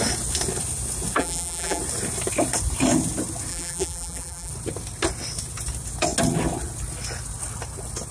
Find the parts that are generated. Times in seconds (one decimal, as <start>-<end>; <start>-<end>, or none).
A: 1.2-1.8; 3.5-4.5